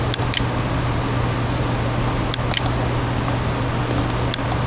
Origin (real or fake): real